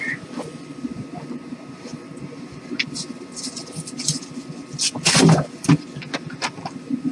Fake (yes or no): no